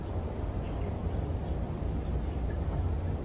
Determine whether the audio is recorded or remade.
recorded